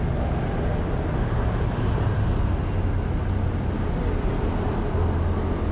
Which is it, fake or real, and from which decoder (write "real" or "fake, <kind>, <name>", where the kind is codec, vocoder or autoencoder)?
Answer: real